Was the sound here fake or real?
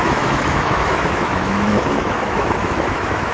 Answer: fake